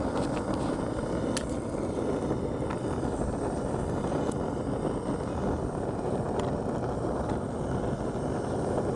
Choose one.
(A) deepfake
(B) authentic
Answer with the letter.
B